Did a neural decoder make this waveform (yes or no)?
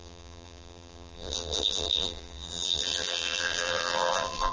yes